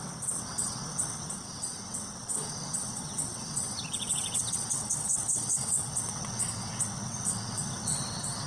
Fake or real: fake